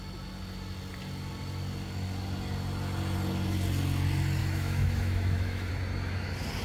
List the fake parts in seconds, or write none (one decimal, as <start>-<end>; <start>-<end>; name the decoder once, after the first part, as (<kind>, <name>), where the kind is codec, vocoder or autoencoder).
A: 4.4-5.7 (autoencoder, DAC-VAE)